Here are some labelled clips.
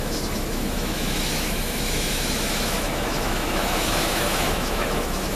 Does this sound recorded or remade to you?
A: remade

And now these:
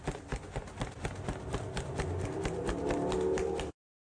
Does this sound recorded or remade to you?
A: recorded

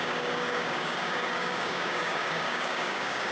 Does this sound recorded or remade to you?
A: remade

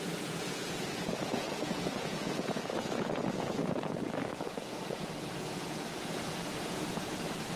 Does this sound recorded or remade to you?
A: remade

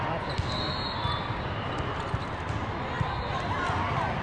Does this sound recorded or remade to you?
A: recorded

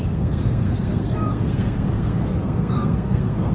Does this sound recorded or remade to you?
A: remade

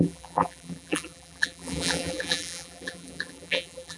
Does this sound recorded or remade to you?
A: remade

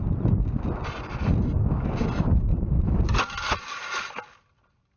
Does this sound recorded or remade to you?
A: recorded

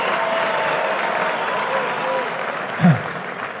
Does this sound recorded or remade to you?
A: recorded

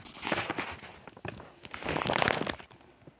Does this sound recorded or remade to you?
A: recorded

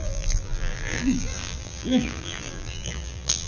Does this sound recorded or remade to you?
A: remade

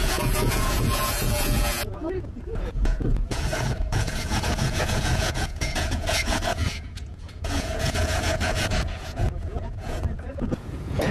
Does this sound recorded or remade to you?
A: remade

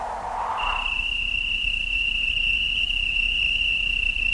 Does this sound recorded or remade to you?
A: recorded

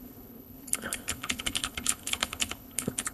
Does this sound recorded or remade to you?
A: remade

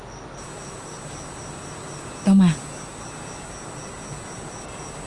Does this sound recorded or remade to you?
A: recorded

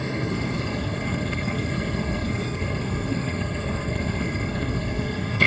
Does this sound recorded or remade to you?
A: remade